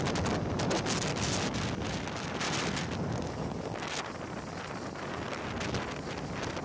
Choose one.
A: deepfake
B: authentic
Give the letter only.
B